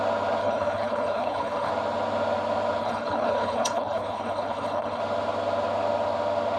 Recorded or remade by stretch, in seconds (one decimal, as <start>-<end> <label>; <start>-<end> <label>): 0.0-0.4 recorded; 0.4-1.7 remade; 1.7-2.8 recorded; 2.8-5.0 remade; 5.0-6.6 recorded

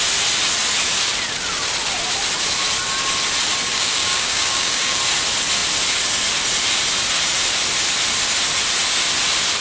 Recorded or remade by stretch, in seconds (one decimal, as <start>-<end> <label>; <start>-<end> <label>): 0.0-3.7 recorded; 3.7-5.0 remade; 5.0-9.6 recorded

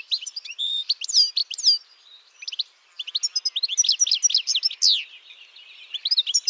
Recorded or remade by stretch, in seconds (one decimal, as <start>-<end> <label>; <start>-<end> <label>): 0.0-1.4 remade; 1.4-2.2 recorded; 2.2-2.8 remade; 2.8-5.3 recorded; 5.3-6.5 remade

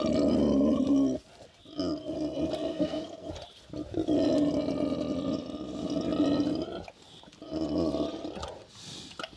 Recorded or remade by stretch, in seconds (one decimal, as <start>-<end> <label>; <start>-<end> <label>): 0.0-2.7 recorded; 2.7-3.3 remade; 3.3-9.4 recorded

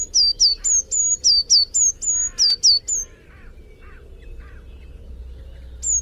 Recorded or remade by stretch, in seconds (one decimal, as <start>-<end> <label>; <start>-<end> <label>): 0.0-6.0 recorded

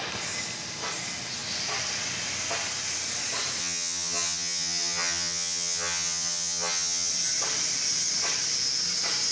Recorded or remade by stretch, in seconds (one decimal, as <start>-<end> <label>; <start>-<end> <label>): 0.0-3.6 recorded; 3.6-7.1 remade; 7.1-9.3 recorded

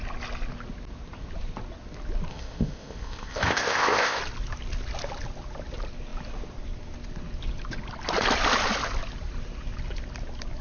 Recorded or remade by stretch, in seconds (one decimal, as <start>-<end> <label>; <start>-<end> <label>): 0.0-2.3 recorded; 2.3-4.2 remade; 4.2-10.6 recorded